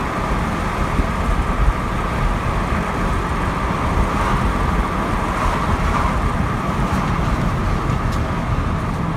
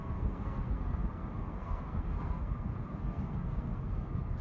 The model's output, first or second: second